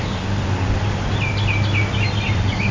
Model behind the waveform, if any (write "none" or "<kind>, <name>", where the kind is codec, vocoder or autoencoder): none